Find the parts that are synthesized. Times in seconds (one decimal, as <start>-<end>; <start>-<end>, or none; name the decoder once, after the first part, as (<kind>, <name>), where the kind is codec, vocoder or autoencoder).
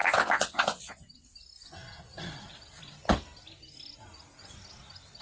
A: 0.0-0.9 (vocoder, WaveNeXt)